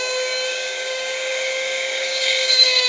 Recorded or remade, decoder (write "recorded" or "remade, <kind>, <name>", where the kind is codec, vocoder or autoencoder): remade, codec, DAC